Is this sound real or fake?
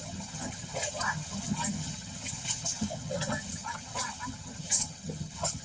fake